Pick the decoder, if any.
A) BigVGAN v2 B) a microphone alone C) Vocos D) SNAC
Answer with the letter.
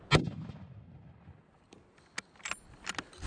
B